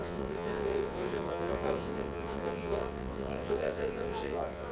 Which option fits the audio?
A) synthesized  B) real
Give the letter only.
A